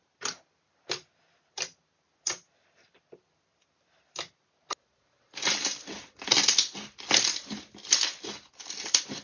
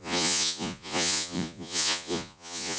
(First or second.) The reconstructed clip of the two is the second